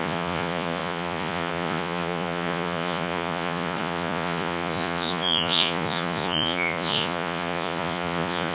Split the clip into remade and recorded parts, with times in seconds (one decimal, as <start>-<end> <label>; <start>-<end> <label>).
0.0-8.5 remade